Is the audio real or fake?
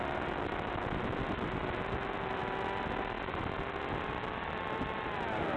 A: real